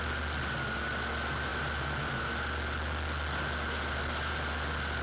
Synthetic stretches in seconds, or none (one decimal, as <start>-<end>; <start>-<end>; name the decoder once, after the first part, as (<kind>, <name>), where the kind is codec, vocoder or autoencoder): none